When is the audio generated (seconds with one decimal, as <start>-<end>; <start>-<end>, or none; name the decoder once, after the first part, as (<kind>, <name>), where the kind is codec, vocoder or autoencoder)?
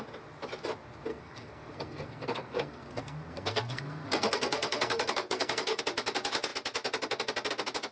1.1-5.8 (codec, SNAC)